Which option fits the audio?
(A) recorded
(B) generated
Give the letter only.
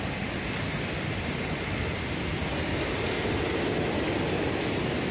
A